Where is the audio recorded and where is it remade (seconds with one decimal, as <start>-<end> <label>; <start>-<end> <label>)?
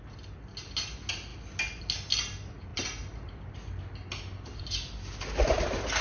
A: 0.0-6.0 recorded